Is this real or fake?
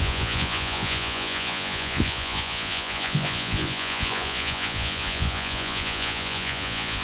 fake